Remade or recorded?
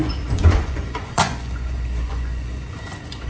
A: remade